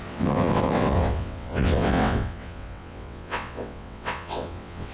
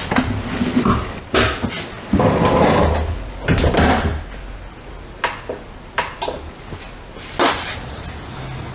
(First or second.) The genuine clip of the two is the second